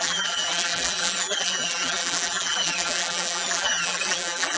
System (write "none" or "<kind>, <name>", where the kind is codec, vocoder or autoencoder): vocoder, BigVGAN v2